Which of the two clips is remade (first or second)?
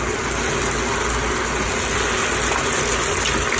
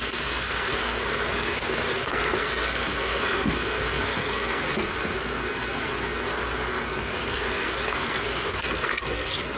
second